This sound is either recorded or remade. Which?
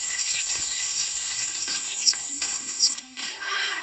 remade